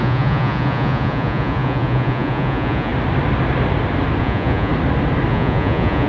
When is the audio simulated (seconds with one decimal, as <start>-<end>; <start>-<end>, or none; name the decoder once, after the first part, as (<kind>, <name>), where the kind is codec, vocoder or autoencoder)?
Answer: 0.0-2.9 (vocoder, Vocos); 4.2-4.7; 5.3-6.1